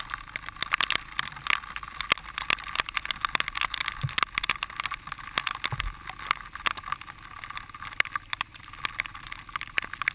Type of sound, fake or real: real